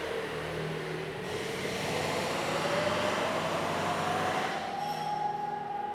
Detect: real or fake real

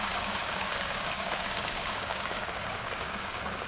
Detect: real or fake fake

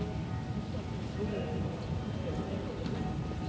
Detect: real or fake real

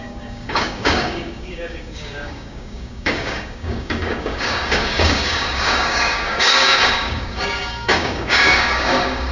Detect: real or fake fake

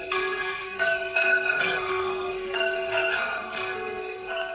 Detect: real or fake fake